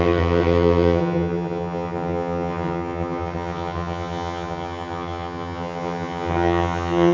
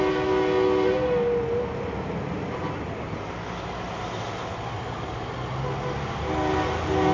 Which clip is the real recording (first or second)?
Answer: second